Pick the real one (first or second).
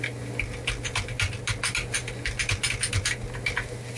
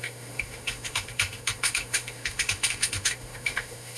first